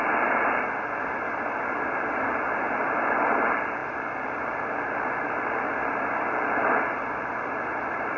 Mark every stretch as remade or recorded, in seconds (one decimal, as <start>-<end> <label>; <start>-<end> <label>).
0.0-8.2 recorded